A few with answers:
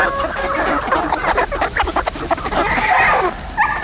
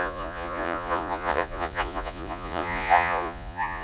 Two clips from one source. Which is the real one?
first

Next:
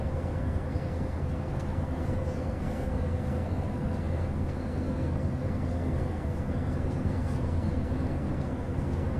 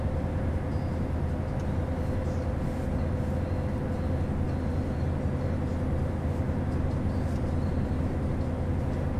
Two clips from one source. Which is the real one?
second